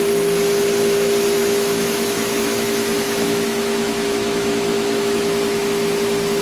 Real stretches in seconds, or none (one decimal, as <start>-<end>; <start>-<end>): 0.0-1.4; 5.2-6.4

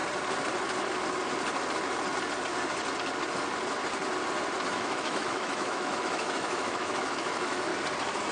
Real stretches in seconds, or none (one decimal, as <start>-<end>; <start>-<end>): 0.0-4.7; 7.7-8.3

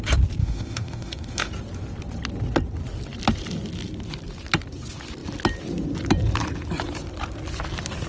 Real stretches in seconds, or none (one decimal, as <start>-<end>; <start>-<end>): 0.0-0.4; 1.5-8.1

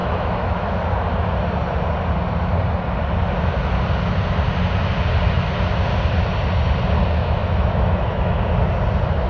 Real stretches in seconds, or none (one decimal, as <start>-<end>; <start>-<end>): 0.8-7.2; 8.4-9.3

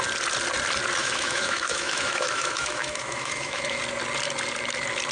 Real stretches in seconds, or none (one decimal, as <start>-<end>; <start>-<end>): 0.0-1.0; 3.8-5.1

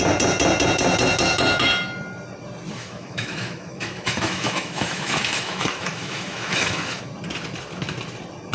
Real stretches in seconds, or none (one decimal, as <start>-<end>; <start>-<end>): 0.0-2.8; 7.0-8.5

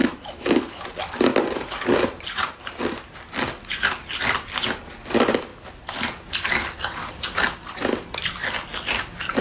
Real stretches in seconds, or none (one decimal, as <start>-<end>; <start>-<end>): 0.6-9.4

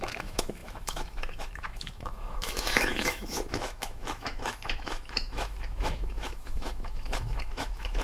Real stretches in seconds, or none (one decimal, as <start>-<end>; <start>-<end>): none